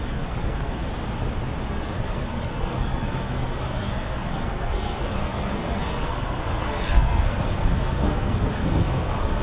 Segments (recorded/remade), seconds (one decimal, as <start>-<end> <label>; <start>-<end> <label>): 0.0-0.9 remade; 0.9-1.7 recorded; 1.7-9.4 remade